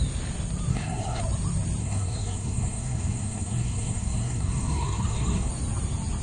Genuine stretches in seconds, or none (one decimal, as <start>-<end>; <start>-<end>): 0.0-0.7; 1.2-1.8; 5.5-6.2